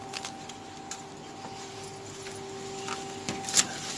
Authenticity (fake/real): real